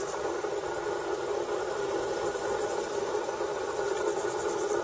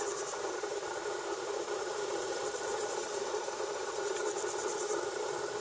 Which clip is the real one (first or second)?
first